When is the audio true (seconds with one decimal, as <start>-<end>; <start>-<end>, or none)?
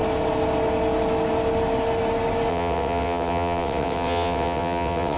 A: 0.0-2.5